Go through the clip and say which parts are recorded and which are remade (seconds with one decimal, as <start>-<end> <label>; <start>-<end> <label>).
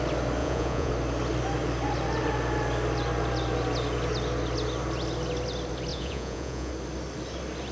0.0-0.4 recorded; 0.4-0.9 remade; 0.9-5.9 recorded; 5.9-6.7 remade; 6.7-7.7 recorded